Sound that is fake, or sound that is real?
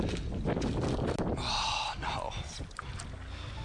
real